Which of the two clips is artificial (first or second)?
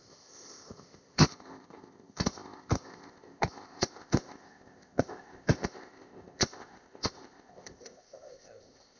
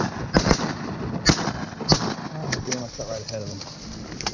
first